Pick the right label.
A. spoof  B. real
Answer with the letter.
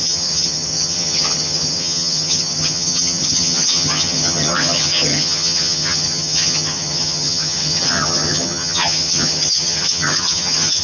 A